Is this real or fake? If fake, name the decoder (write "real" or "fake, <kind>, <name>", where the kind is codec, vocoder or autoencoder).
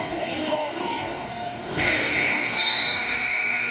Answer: fake, codec, DAC